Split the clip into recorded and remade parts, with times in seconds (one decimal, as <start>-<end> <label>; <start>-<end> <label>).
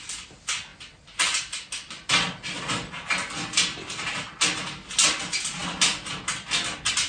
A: 0.0-7.1 recorded